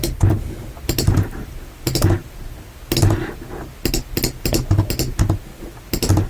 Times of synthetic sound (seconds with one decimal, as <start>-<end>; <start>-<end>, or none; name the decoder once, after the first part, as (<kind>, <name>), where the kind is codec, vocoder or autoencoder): none